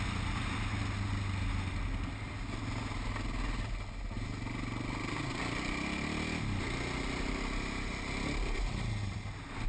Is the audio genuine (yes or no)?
yes